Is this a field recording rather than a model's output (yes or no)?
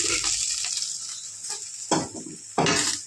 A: yes